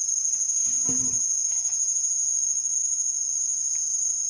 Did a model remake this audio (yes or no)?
no